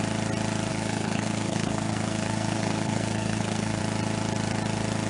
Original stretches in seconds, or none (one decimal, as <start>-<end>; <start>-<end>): 0.0-0.7; 3.8-5.1

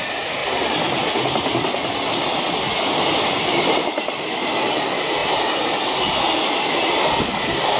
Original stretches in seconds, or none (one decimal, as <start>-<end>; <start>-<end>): 0.0-7.8

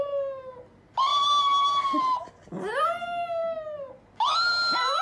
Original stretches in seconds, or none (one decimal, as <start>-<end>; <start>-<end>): 0.0-5.0

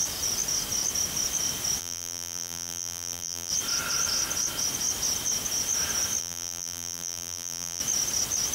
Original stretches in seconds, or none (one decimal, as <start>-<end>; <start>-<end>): 0.0-1.8; 3.5-6.2; 7.8-8.5

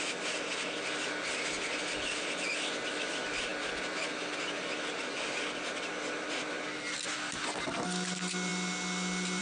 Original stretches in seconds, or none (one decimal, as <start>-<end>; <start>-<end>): 0.0-9.4

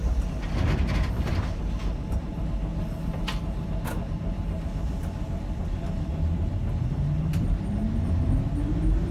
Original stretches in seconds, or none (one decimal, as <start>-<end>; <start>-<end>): 0.0-9.1

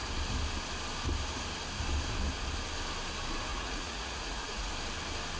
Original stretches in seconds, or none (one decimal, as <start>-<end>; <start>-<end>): 0.0-3.5; 4.7-5.4